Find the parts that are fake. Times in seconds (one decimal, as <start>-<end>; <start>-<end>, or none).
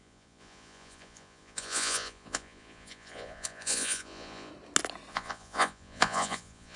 0.0-4.5; 5.1-6.8